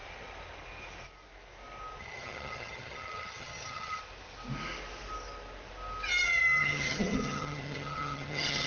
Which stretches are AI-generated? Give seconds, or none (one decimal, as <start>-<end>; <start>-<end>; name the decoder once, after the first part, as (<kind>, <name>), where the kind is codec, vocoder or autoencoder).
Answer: 2.0-4.0 (vocoder, HiFi-GAN); 6.6-8.7